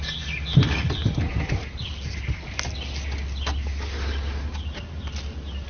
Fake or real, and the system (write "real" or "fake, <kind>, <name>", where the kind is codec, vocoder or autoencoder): real